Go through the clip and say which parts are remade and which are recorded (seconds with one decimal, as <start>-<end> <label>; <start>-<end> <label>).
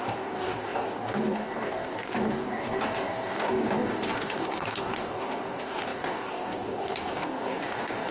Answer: 0.0-8.1 remade